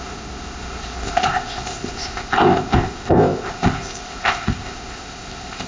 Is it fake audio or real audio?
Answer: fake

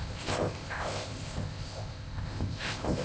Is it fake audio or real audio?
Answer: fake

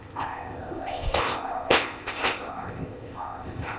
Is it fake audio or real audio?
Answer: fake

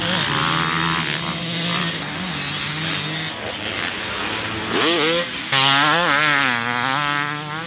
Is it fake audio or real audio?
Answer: real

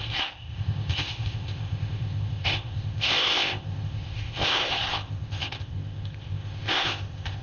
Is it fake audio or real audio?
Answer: fake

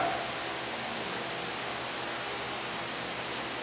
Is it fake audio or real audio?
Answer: real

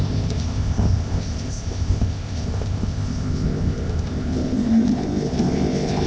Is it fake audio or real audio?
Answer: fake